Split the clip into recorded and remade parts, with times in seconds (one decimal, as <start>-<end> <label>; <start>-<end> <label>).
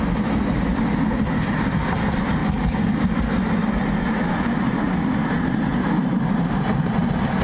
0.0-7.4 recorded